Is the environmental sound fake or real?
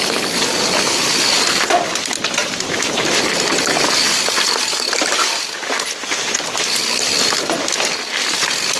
real